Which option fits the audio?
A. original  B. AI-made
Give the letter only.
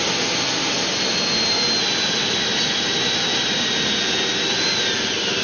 A